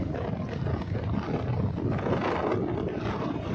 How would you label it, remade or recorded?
recorded